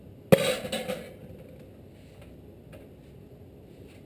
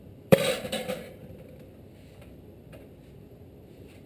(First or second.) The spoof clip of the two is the second